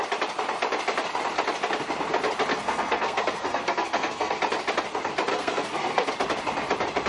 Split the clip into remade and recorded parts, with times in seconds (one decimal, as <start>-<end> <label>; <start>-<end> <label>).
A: 0.0-2.5 recorded; 2.5-4.4 remade; 4.4-5.3 recorded; 5.3-6.1 remade; 6.1-7.1 recorded